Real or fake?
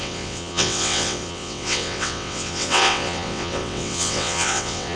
fake